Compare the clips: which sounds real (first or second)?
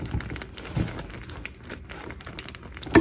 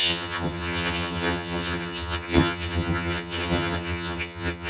first